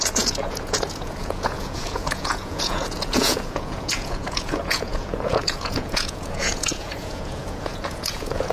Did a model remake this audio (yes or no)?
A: yes